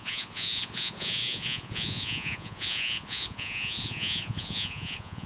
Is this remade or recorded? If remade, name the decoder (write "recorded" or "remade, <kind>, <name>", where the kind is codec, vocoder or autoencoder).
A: remade, vocoder, Vocos